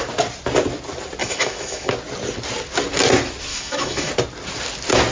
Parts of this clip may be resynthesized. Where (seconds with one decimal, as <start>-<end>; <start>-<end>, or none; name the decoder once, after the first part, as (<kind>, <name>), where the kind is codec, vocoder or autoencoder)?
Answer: 1.2-1.9 (autoencoder, DAC-VAE); 3.5-4.1